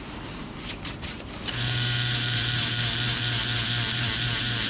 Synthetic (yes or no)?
yes